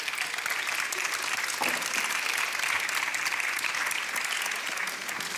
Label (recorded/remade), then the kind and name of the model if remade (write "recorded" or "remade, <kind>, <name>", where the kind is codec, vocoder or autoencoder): recorded